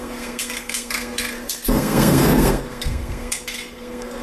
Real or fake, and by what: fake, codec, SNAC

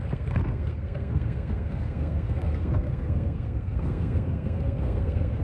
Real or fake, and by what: fake, codec, SNAC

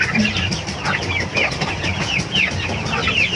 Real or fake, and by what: real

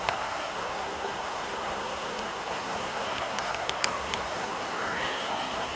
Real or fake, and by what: fake, codec, SNAC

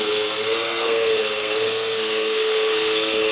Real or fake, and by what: fake, codec, SNAC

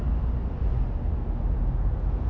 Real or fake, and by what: real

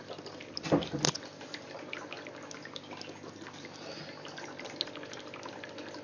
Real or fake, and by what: real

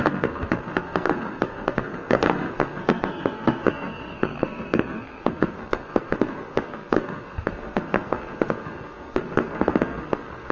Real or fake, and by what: fake, codec, SNAC